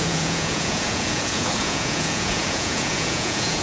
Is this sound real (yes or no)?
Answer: no